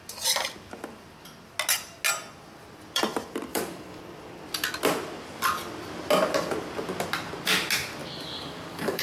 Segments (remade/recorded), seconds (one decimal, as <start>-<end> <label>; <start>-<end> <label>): 0.0-3.5 recorded; 3.5-4.0 remade; 4.0-8.0 recorded; 8.0-9.0 remade